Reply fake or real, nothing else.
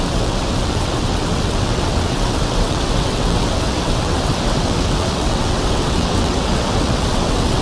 fake